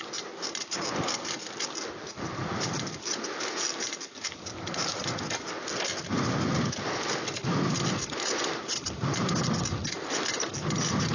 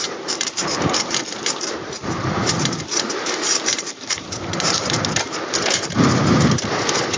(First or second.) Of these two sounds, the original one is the first